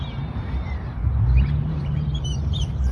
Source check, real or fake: fake